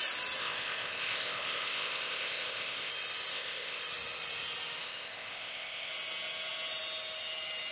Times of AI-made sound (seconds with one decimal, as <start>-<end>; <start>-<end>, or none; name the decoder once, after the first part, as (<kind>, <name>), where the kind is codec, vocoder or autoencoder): 0.4-2.9 (codec, ZipCodec); 3.3-3.8; 4.8-5.9